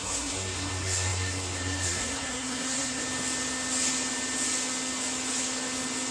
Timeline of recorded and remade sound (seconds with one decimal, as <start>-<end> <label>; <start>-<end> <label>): 0.0-3.0 remade; 3.0-6.1 recorded